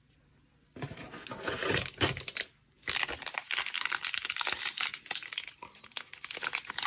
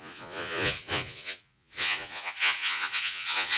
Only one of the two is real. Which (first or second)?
first